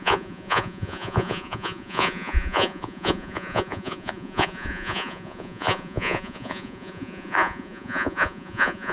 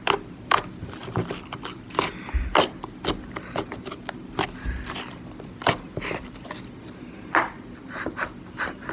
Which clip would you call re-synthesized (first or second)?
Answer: first